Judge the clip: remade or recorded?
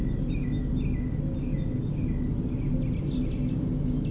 recorded